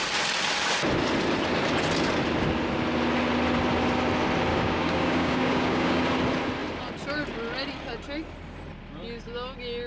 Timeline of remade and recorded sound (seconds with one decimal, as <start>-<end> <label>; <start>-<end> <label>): 0.0-4.5 recorded; 4.5-6.0 remade; 6.0-9.9 recorded